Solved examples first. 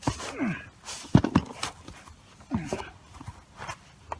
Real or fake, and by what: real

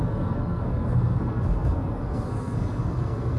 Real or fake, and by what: fake, codec, SNAC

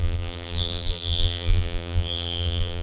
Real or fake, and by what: fake, vocoder, BigVGAN v2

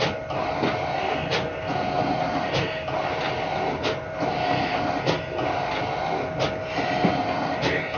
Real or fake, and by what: real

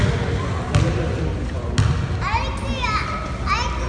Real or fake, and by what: real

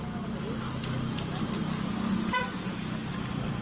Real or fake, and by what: real